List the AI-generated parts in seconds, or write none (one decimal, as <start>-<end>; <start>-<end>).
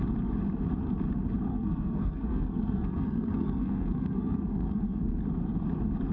1.5-5.2